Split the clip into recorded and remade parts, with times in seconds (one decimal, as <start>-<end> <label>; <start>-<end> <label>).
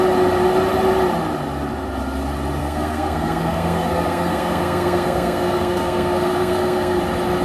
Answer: 0.0-2.6 recorded; 2.6-7.0 remade; 7.0-7.4 recorded